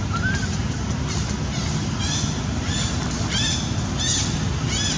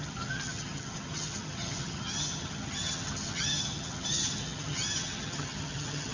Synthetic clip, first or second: second